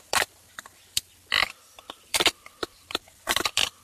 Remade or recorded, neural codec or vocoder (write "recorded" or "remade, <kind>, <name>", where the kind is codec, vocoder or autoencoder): remade, vocoder, BigVGAN v2